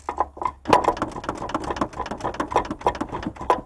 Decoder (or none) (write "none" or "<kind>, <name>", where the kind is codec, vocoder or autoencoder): none